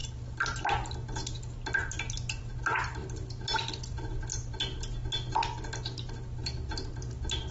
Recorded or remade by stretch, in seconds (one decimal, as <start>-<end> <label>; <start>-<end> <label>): 0.0-7.5 recorded